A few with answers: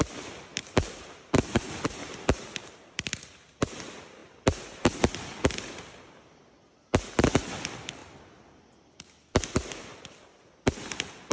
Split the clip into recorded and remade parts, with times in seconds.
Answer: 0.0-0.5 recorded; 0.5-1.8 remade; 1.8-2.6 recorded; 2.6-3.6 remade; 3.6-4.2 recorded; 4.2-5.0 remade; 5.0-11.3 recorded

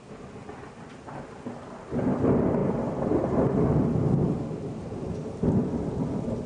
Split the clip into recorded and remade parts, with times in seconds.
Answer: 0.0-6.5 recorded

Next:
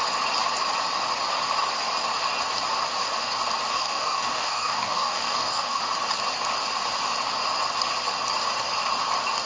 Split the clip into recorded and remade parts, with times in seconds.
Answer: 0.0-3.7 recorded; 3.7-5.8 remade; 5.8-9.5 recorded

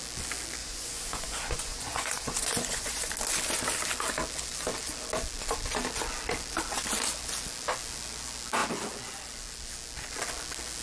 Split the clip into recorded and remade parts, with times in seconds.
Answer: 0.0-0.6 recorded; 0.6-3.1 remade; 3.1-10.8 recorded